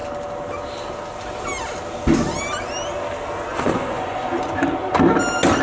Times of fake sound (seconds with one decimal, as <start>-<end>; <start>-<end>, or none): 3.5-4.3

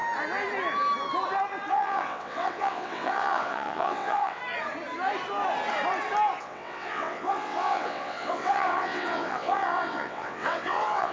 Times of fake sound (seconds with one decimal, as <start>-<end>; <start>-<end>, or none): 1.7-4.4; 6.4-11.1

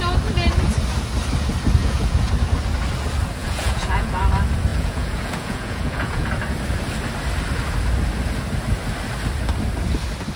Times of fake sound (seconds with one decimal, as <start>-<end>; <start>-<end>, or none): 1.8-2.3; 3.4-4.2; 4.7-6.3

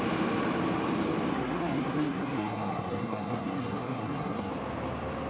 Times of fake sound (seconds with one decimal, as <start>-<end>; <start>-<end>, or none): 1.3-4.5

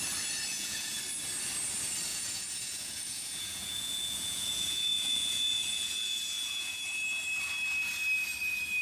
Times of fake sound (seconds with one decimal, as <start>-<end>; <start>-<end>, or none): 0.5-1.0; 2.1-6.8

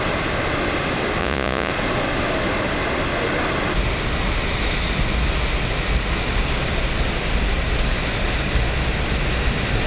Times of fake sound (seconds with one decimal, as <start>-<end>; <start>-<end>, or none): 1.2-1.7

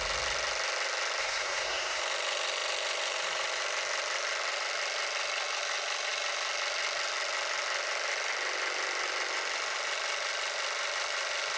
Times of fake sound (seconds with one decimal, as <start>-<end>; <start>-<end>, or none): 1.2-2.0

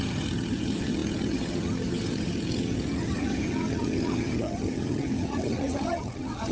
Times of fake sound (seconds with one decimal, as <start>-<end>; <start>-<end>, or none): 0.0-6.5